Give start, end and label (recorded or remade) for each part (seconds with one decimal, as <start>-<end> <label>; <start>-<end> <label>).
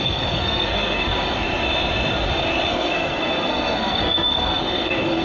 0.0-1.1 remade; 1.1-2.7 recorded; 2.7-5.2 remade